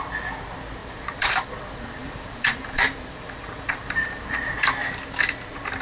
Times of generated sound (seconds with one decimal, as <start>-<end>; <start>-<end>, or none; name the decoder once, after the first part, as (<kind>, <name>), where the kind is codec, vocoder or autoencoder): 0.8-1.5 (vocoder, BigVGAN v2); 2.0-4.5